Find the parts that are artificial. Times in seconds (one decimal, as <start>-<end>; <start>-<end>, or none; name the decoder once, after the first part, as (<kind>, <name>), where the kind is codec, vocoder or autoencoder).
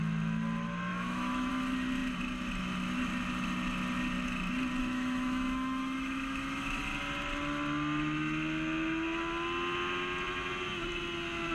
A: 0.9-1.5 (autoencoder, DAC-VAE); 4.8-6.8